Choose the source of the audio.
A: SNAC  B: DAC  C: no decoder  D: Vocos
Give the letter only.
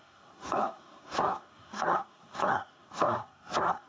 A